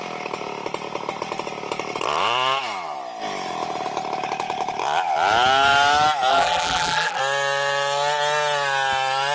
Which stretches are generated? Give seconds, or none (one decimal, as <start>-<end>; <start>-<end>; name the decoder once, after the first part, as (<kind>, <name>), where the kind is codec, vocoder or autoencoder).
6.3-7.2 (vocoder, BigVGAN v2)